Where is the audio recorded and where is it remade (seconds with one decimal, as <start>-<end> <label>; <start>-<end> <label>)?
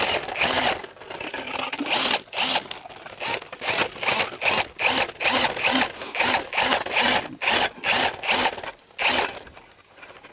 0.0-10.3 recorded